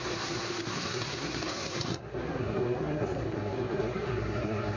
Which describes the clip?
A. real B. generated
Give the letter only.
B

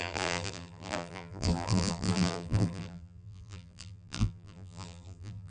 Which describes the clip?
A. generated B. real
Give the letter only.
A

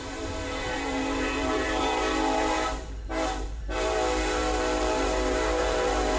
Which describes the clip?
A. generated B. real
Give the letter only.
A